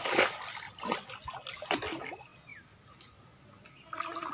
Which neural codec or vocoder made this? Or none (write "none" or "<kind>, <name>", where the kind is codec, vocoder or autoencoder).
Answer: none